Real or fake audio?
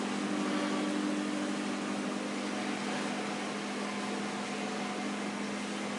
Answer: real